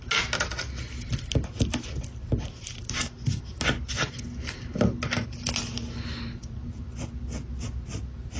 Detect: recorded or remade recorded